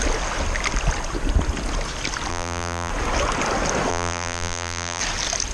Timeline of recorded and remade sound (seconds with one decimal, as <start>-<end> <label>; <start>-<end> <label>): 0.0-2.3 recorded; 2.3-2.9 remade; 2.9-3.9 recorded; 3.9-5.0 remade; 5.0-5.5 recorded

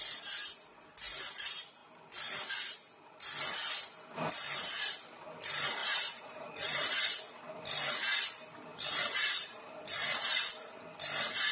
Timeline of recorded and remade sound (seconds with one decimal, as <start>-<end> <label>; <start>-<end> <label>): 0.0-5.8 recorded; 5.8-6.9 remade; 6.9-8.7 recorded; 8.7-9.8 remade; 9.8-11.5 recorded

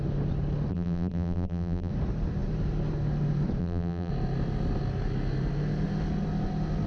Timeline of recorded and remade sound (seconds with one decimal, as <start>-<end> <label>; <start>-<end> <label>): 0.0-0.7 recorded; 0.7-1.9 remade; 1.9-3.6 recorded; 3.6-4.1 remade; 4.1-6.9 recorded

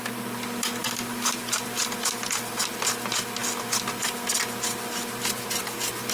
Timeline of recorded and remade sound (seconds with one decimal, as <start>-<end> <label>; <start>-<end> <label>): 0.0-0.8 recorded; 0.8-2.6 remade; 2.6-6.1 recorded